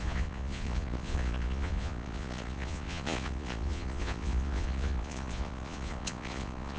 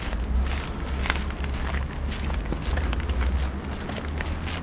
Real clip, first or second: second